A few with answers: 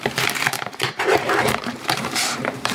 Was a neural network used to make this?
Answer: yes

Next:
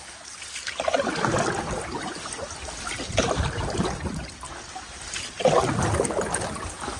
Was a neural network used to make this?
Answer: no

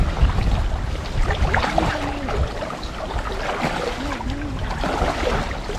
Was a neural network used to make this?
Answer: no